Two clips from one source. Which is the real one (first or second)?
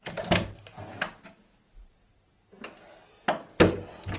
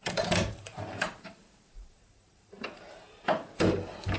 first